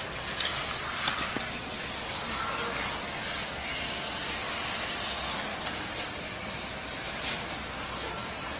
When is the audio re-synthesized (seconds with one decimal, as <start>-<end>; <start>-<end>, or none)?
none